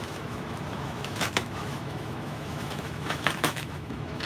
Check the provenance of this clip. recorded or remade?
remade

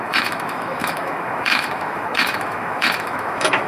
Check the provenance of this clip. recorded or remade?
remade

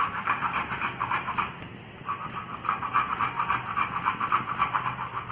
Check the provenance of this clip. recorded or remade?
recorded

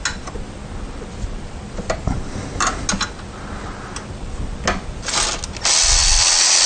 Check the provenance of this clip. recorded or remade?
recorded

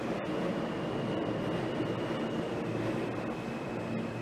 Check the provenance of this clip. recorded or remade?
recorded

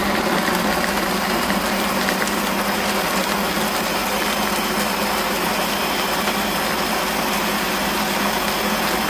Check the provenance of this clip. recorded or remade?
recorded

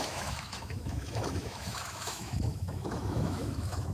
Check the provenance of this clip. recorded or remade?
remade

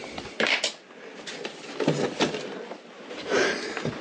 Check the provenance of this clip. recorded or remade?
recorded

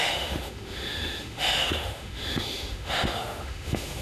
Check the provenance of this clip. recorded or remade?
remade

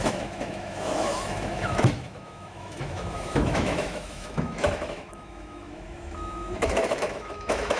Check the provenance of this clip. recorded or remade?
remade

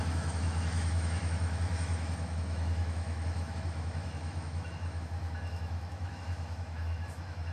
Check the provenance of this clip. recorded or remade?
remade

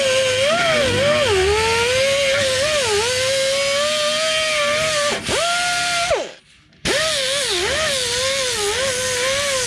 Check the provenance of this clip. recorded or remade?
recorded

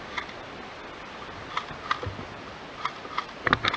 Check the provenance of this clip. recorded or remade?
recorded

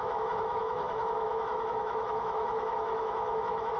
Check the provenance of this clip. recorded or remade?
remade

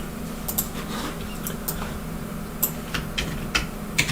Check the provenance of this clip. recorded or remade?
recorded